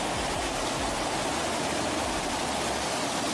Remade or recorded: recorded